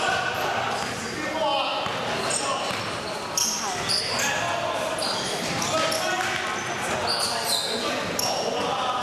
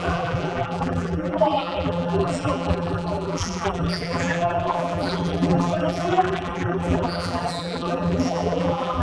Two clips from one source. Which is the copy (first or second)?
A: second